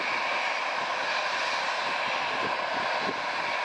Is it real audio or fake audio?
real